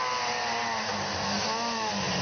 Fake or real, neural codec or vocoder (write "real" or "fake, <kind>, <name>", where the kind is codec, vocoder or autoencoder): real